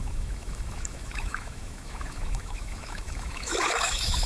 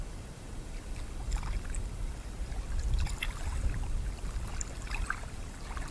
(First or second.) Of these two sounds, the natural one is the second